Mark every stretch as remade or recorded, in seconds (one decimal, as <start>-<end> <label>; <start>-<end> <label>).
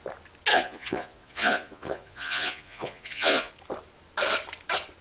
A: 0.0-0.5 recorded; 0.5-3.5 remade; 3.5-5.0 recorded